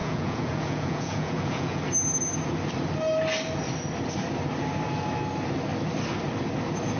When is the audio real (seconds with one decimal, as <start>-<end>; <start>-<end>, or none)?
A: 1.8-7.0